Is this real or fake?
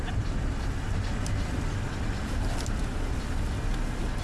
real